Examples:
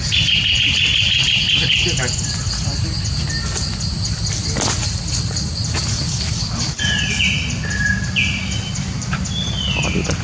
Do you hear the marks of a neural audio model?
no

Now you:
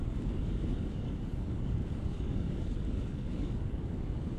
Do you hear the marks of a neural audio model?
yes